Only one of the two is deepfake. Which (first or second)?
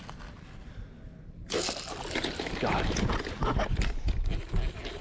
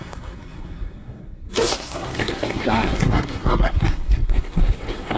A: second